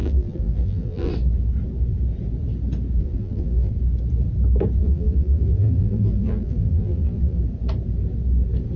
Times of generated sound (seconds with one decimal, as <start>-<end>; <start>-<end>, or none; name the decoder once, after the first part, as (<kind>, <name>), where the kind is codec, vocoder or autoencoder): 0.0-1.1 (vocoder, BigVGAN v2); 3.0-3.7; 4.8-7.4